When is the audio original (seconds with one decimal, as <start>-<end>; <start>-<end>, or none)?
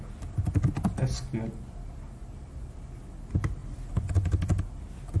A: 0.0-3.6; 4.6-5.2